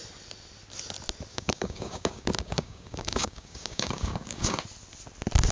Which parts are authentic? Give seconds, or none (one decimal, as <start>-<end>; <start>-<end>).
0.0-1.3; 4.6-5.5